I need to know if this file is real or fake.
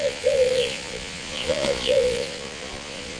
fake